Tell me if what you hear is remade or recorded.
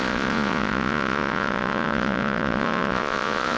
remade